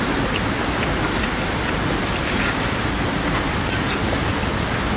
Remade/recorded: recorded